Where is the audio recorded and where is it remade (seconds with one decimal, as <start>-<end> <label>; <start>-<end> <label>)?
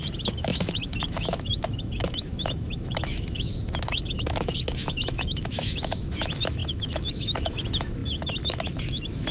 0.0-9.3 remade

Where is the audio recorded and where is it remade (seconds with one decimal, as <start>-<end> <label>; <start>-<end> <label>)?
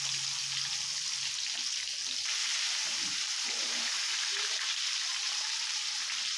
0.0-2.4 recorded; 2.4-6.4 remade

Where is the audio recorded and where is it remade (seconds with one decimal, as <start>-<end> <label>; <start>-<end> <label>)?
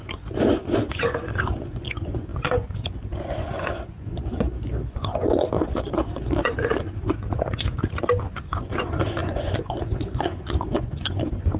0.0-7.7 remade; 7.7-8.3 recorded; 8.3-11.6 remade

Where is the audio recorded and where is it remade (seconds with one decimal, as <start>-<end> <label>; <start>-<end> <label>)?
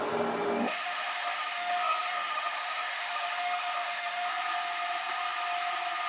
0.0-0.6 recorded; 0.6-4.3 remade; 4.3-6.1 recorded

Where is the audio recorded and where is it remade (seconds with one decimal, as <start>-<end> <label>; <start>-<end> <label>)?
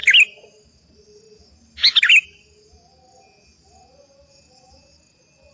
0.0-5.5 recorded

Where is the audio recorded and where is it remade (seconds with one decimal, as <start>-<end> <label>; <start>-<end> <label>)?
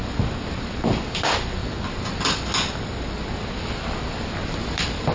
0.0-5.1 recorded